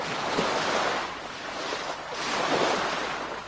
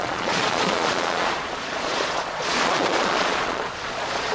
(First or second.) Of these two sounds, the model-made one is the second